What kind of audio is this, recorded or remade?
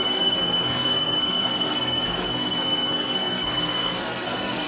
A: remade